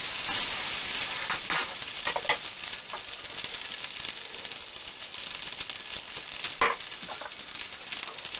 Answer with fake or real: real